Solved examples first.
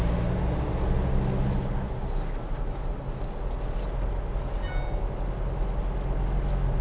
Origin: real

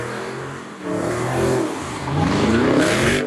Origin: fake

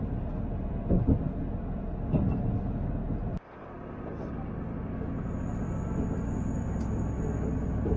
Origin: real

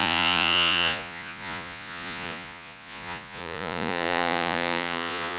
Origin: fake